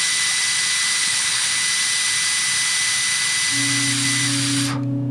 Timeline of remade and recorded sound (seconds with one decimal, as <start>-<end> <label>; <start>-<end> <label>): 0.0-1.0 recorded; 1.0-1.5 remade; 1.5-5.1 recorded